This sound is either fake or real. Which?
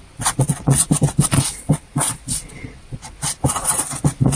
fake